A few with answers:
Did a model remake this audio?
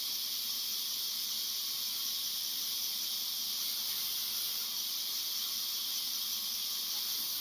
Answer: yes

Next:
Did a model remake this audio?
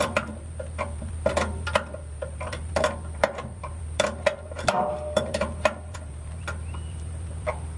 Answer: yes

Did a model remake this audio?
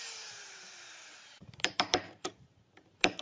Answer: yes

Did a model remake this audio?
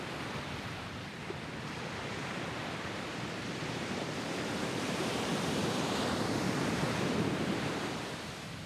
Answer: yes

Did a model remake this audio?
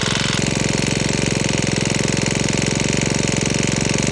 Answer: no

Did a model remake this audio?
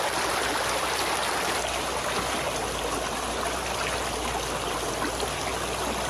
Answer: no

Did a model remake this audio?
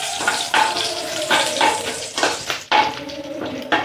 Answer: yes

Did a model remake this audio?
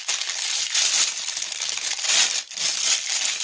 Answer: no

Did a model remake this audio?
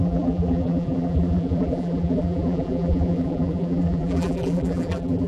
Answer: yes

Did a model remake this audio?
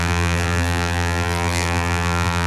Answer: yes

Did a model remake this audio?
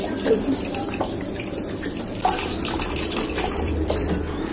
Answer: yes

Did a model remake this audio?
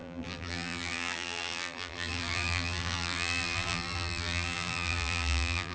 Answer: yes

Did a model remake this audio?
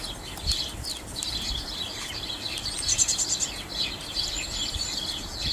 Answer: no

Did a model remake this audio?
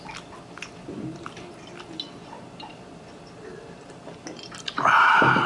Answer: yes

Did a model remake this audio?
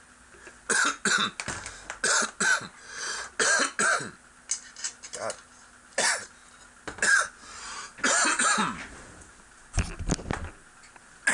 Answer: no